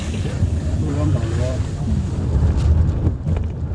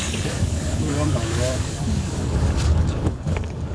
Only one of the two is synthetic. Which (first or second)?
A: second